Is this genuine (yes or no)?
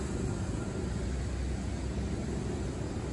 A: yes